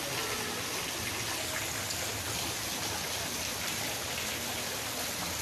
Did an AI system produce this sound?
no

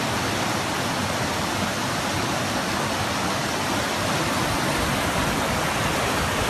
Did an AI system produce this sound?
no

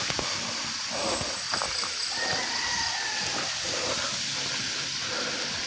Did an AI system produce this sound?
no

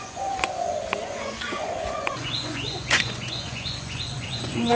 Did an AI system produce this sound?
yes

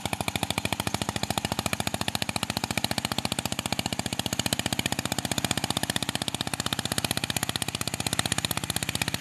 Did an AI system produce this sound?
no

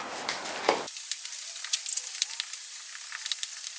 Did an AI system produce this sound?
no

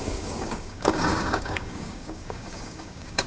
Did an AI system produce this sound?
yes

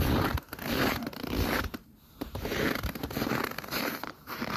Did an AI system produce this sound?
yes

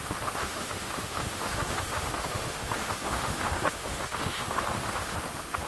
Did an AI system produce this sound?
yes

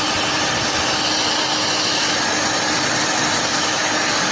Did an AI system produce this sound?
no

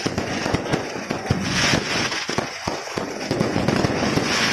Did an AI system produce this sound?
yes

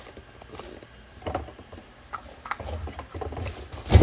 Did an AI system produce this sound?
yes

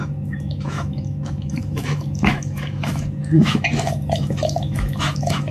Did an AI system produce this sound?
yes